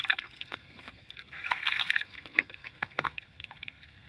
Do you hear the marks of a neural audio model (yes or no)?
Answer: yes